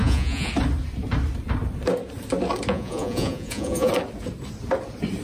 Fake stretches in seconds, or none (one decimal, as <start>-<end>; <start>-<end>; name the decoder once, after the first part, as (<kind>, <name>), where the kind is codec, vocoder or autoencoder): 0.0-0.5 (vocoder, Vocos); 2.7-3.9